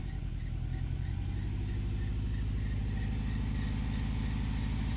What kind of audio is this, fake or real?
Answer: real